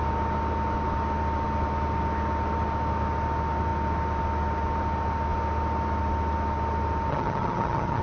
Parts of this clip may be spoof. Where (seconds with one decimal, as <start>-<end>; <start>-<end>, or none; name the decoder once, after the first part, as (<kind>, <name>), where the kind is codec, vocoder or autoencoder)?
7.1-8.0 (vocoder, HiFi-GAN)